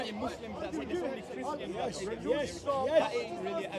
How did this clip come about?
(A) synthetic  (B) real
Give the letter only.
B